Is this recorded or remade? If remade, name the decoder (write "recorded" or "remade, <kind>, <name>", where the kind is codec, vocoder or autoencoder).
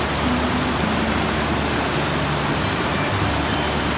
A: recorded